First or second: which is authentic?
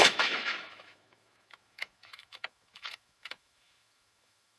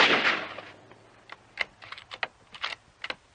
second